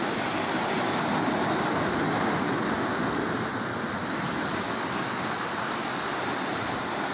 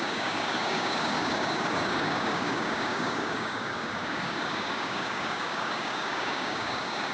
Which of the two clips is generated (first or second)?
second